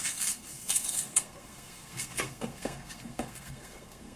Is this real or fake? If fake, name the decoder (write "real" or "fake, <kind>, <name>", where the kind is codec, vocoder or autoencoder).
fake, codec, SNAC